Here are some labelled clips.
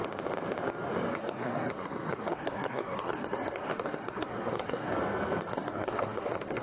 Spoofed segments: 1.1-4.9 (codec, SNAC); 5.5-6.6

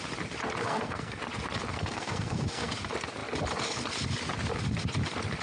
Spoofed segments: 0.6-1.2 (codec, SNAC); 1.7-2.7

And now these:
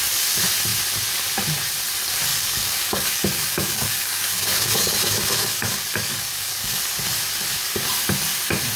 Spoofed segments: 2.3-6.8 (codec, DAC)

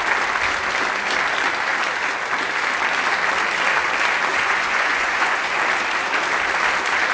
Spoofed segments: 4.3-5.6 (vocoder, Vocos)

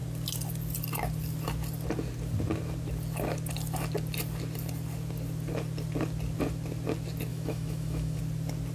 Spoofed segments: 7.3-8.2 (autoencoder, DAC-VAE)

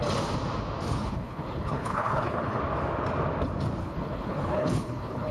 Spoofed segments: 0.9-2.6 (codec, HILCodec); 3.8-5.3